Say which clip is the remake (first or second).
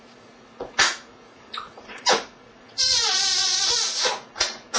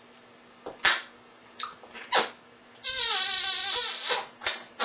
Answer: first